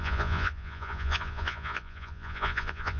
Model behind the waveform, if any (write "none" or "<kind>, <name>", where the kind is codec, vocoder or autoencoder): vocoder, Vocos